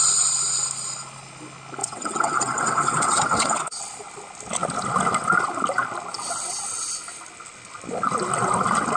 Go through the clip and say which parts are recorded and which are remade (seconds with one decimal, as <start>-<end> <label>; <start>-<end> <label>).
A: 0.0-1.8 recorded; 1.8-3.8 remade; 3.8-9.0 recorded